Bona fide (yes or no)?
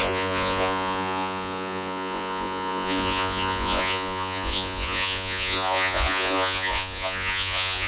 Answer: no